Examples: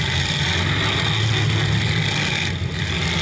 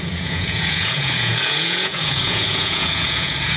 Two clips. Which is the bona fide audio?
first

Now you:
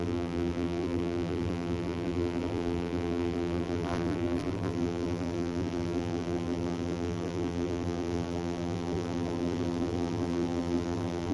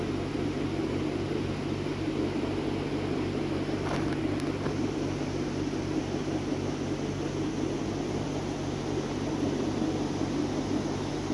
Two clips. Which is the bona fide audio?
second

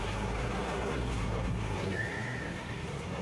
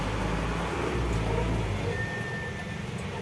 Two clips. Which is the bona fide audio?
second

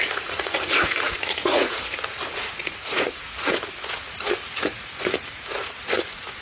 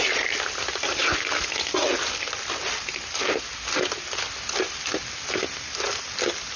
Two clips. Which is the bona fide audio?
second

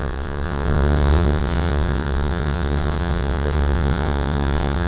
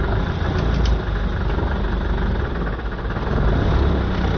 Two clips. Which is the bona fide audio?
second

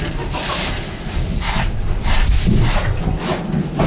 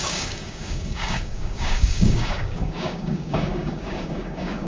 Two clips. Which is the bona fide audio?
first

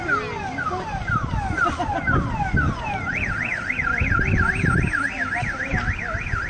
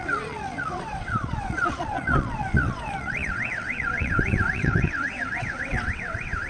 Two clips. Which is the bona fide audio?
first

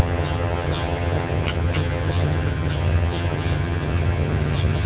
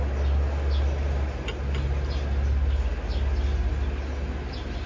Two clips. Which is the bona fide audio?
second